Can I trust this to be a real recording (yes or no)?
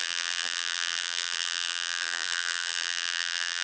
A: no